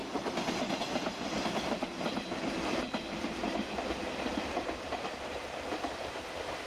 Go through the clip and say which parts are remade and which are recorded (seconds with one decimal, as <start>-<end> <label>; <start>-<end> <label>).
0.0-0.5 recorded; 0.5-6.7 remade